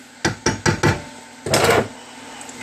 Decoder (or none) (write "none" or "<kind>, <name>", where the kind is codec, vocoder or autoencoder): none